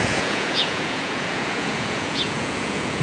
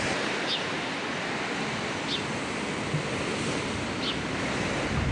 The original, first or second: second